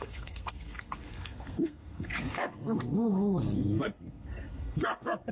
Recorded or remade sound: remade